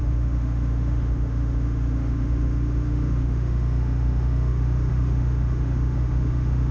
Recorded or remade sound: remade